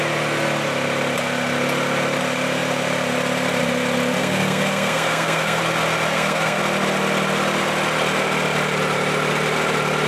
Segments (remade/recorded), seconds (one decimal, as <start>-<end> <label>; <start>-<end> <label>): 0.0-4.2 recorded; 4.2-5.6 remade; 5.6-6.1 recorded; 6.1-6.6 remade; 6.6-10.1 recorded

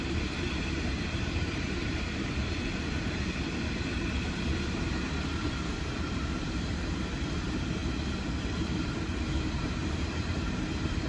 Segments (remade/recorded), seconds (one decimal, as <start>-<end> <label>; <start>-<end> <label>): 0.0-7.8 remade; 7.8-8.4 recorded; 8.4-11.1 remade

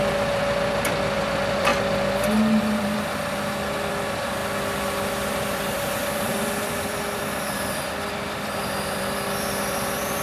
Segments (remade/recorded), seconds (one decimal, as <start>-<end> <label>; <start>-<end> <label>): 0.0-1.7 remade; 1.7-2.6 recorded; 2.6-4.4 remade; 4.4-5.1 recorded; 5.1-10.2 remade

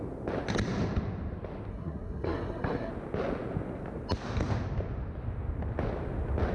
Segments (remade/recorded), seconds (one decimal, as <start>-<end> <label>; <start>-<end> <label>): 0.0-1.7 recorded; 1.7-2.9 remade; 2.9-6.5 recorded

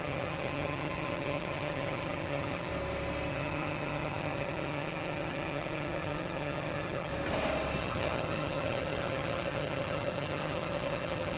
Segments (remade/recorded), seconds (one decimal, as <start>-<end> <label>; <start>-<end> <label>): 0.0-2.7 remade; 2.7-3.3 recorded; 3.3-7.1 remade; 7.1-7.8 recorded; 7.8-11.4 remade

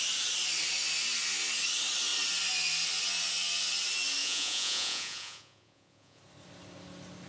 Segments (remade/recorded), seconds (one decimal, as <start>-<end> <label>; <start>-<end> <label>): 0.0-4.2 recorded; 4.2-6.2 remade; 6.2-7.3 recorded

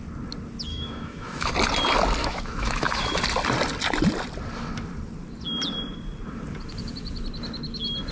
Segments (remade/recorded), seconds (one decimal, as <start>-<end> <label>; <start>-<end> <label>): 0.0-0.7 recorded; 0.7-1.5 remade; 1.5-2.2 recorded; 2.2-3.2 remade; 3.2-8.1 recorded